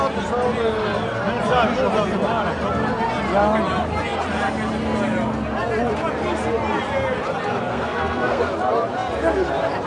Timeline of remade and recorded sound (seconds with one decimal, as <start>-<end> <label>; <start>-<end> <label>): 0.0-7.7 recorded; 7.7-8.4 remade; 8.4-9.9 recorded